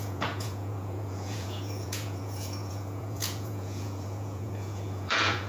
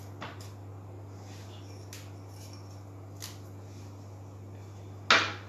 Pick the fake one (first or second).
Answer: first